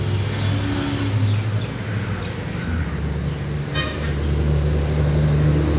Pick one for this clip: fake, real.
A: real